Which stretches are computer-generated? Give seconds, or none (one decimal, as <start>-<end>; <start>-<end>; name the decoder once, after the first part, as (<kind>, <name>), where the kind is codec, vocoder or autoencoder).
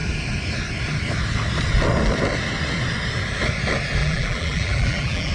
4.0-5.3 (vocoder, BigVGAN v2)